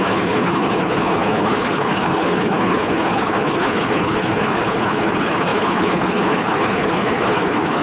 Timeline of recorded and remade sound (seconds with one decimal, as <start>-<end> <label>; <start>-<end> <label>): 0.0-7.8 remade